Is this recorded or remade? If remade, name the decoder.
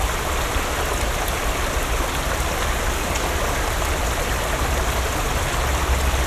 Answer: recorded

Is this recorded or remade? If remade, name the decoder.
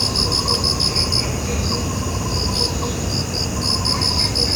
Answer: recorded